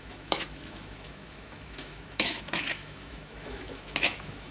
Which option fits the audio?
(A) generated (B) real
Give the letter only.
A